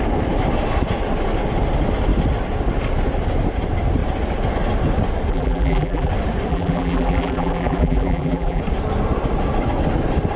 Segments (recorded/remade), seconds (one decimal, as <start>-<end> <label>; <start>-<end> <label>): 0.0-5.3 recorded; 5.3-6.1 remade; 6.1-6.5 recorded; 6.5-8.6 remade; 8.6-10.4 recorded